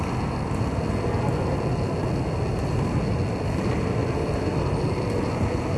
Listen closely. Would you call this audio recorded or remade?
recorded